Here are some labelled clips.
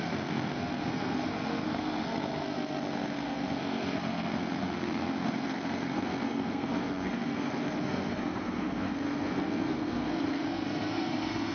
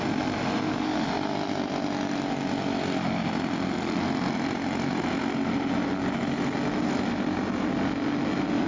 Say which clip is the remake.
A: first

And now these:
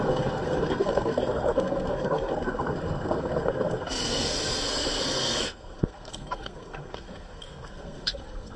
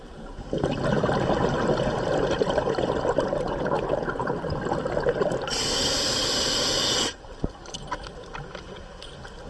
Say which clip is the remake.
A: first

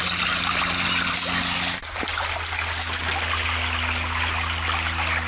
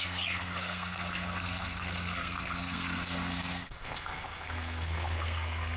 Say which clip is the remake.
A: second